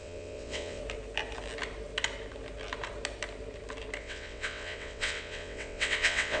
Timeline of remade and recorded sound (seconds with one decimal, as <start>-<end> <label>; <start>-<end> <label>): 0.0-0.8 remade; 0.8-4.0 recorded; 4.0-6.4 remade